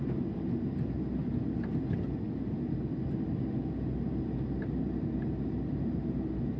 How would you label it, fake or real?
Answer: real